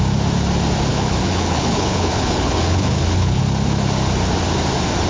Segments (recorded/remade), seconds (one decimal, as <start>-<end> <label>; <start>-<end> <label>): 0.0-0.9 recorded; 0.9-3.4 remade; 3.4-5.1 recorded